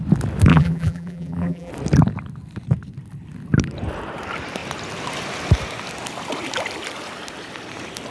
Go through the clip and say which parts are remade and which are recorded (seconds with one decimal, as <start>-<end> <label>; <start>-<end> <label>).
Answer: 0.0-0.5 recorded; 0.5-1.7 remade; 1.7-8.1 recorded